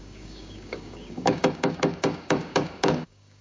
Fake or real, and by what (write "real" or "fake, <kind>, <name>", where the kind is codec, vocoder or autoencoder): fake, codec, DAC